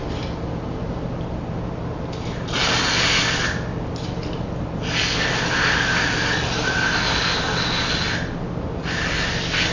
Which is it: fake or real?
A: real